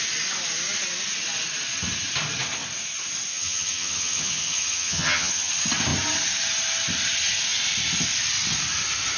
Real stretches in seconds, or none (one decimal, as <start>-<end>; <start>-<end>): 0.0-3.3; 5.5-9.2